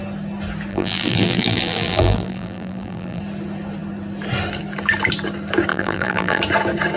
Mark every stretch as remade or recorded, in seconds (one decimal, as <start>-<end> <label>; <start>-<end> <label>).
0.0-0.7 recorded; 0.7-3.2 remade; 3.2-5.7 recorded; 5.7-6.4 remade; 6.4-7.0 recorded